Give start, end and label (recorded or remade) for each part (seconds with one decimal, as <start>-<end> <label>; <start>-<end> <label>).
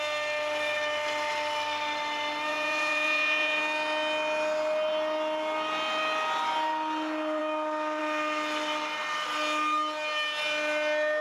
0.0-2.5 recorded; 2.5-3.6 remade; 3.6-11.2 recorded